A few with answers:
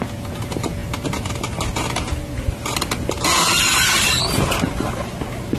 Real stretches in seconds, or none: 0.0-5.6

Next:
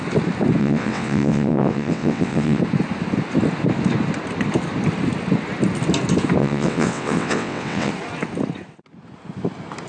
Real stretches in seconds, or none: 0.0-0.6; 2.6-6.4; 7.9-9.9